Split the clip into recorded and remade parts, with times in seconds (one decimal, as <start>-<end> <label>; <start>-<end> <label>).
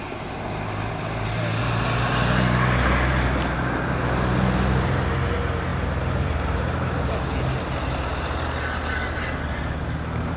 0.0-5.7 recorded; 5.7-7.0 remade; 7.0-10.4 recorded